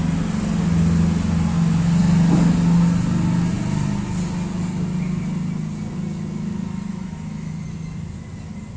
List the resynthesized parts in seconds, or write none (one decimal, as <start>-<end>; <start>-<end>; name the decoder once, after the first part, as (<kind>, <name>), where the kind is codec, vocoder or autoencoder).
6.9-7.5 (autoencoder, DAC-VAE)